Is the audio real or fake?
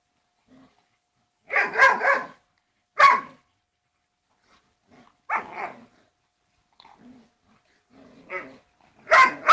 real